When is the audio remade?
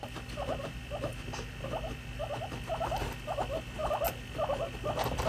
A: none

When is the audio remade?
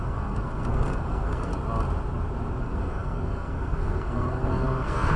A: 0.0-1.5; 2.6-5.2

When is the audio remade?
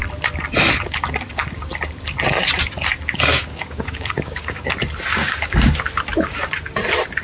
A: 3.3-4.7; 5.2-5.8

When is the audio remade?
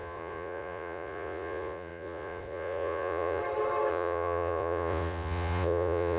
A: 0.0-3.4; 3.9-6.2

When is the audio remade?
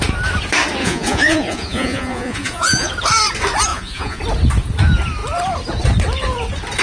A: 0.8-2.9; 3.7-4.2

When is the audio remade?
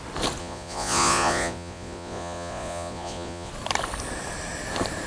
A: 0.4-3.5